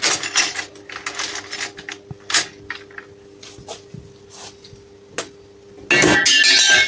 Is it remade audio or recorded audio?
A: recorded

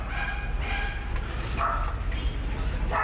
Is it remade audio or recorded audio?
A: recorded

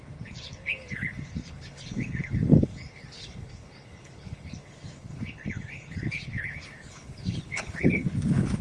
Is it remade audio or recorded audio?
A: remade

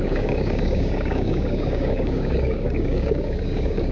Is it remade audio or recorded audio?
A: remade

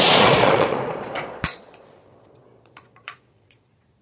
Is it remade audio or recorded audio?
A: remade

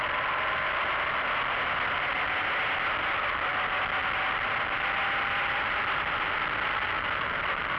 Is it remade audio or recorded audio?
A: recorded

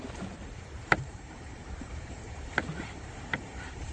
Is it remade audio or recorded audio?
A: remade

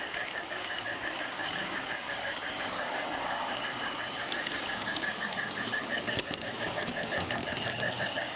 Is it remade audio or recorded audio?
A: remade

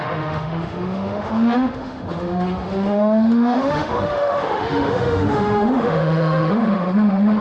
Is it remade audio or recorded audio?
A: remade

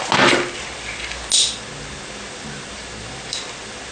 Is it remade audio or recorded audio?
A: recorded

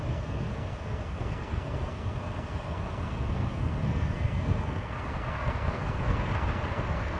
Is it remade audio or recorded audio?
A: remade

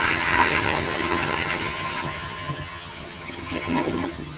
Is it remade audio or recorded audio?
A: remade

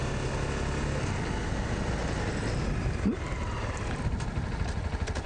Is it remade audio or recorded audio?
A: recorded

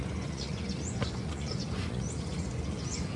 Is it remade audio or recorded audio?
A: remade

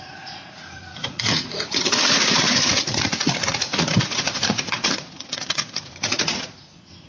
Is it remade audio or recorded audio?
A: remade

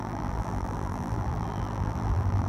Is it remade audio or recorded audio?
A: remade